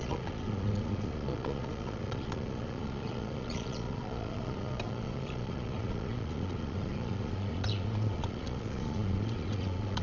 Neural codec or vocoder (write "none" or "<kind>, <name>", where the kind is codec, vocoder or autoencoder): vocoder, Vocos